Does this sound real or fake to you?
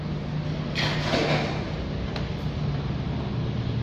real